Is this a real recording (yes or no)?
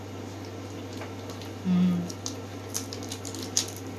yes